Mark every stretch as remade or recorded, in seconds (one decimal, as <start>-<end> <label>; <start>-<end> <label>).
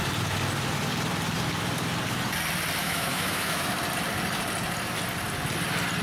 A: 0.0-2.8 recorded; 2.8-3.7 remade; 3.7-6.0 recorded